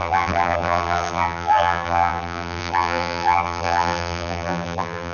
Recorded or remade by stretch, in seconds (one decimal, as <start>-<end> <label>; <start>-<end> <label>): 0.0-5.1 remade